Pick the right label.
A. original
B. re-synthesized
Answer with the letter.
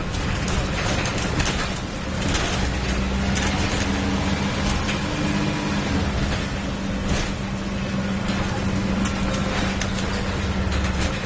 A